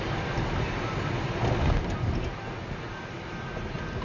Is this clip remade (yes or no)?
no